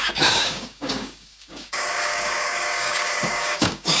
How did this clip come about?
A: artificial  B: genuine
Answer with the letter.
A